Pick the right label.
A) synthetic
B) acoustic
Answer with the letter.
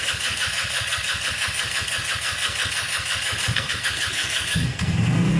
A